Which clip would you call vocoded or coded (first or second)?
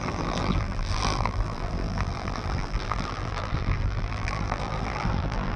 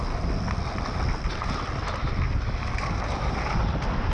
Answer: first